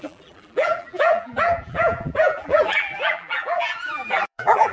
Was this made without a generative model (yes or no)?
no